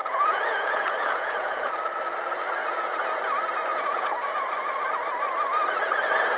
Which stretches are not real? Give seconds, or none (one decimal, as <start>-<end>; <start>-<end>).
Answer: 0.0-1.7; 2.6-3.2; 3.7-4.5